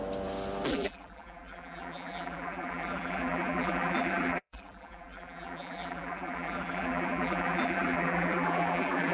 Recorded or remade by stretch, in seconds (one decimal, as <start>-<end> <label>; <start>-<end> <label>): 0.0-0.7 recorded; 0.7-9.1 remade